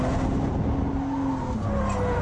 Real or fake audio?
real